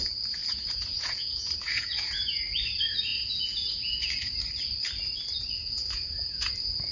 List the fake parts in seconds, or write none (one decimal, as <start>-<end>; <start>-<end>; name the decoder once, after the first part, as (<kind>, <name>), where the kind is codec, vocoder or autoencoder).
0.4-2.4 (vocoder, Vocos); 3.1-4.4; 5.6-6.5